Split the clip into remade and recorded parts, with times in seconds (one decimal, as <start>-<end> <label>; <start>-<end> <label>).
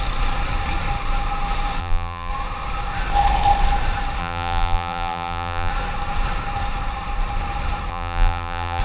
0.0-1.8 recorded; 1.8-2.3 remade; 2.3-4.2 recorded; 4.2-5.7 remade; 5.7-7.9 recorded; 7.9-8.8 remade